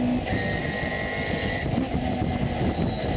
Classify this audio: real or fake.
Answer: real